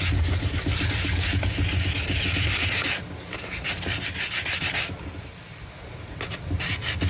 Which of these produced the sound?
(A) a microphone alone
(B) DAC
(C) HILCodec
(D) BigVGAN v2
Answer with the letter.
A